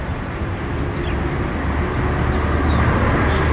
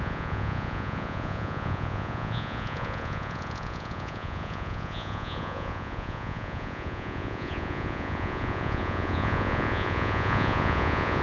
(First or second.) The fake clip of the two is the second